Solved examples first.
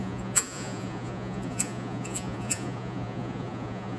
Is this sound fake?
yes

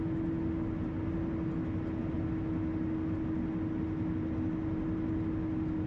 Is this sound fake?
no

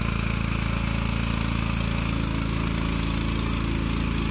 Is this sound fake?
no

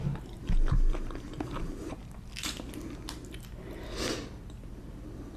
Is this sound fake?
no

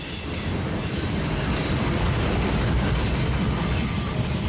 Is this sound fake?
no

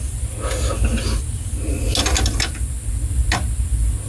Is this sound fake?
no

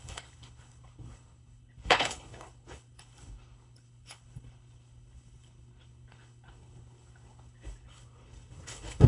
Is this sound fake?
yes